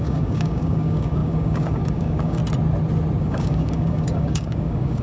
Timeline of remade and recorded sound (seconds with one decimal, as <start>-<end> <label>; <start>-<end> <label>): 0.0-2.4 remade; 2.4-3.2 recorded; 3.2-5.0 remade